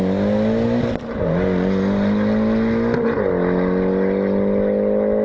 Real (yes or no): yes